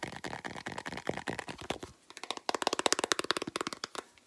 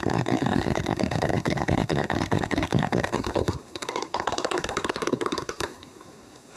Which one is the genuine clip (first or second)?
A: first